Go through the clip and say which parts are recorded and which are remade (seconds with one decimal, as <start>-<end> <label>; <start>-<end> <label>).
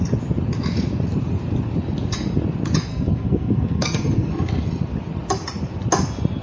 0.0-2.9 recorded; 2.9-4.3 remade; 4.3-6.4 recorded